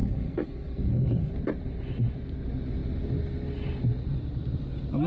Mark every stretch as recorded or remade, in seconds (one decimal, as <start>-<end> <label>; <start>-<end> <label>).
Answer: 0.0-1.3 remade; 1.3-5.1 recorded